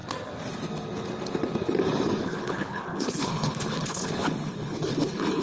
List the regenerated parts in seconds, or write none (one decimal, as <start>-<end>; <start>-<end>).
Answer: 2.2-5.4